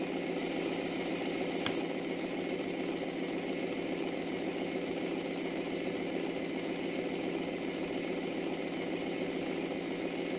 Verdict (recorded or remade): recorded